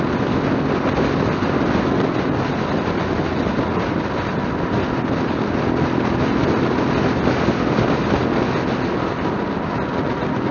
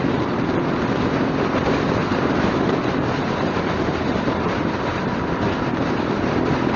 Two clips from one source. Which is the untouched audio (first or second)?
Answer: first